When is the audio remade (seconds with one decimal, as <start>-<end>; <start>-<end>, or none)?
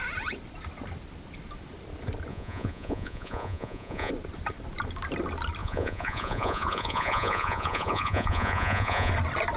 2.3-4.1; 5.6-9.1